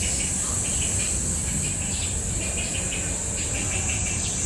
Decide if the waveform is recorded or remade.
recorded